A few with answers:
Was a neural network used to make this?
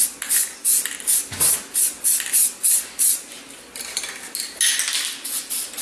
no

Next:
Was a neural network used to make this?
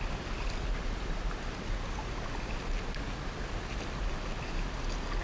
no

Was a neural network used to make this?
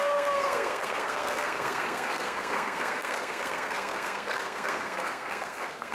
yes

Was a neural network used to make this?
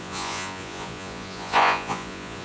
yes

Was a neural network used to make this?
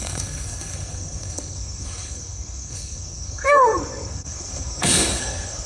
yes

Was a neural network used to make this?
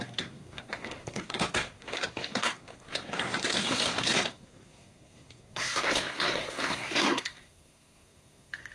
yes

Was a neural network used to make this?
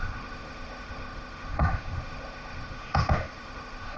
yes